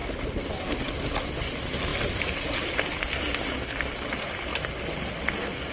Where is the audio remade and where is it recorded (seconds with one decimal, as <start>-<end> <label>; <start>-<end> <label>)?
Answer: 0.0-0.5 remade; 0.5-4.5 recorded; 4.5-5.7 remade